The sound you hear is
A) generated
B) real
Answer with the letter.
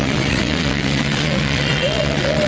A